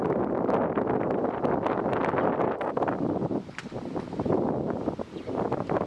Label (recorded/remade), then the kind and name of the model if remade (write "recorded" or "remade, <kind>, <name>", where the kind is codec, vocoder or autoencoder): recorded